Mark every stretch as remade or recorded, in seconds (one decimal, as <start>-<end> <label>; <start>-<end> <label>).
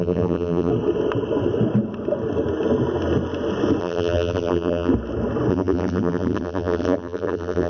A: 0.0-0.7 remade; 0.7-3.8 recorded; 3.8-4.9 remade; 4.9-5.5 recorded; 5.5-7.7 remade